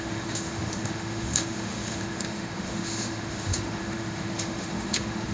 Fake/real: fake